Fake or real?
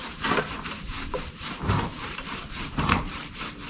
fake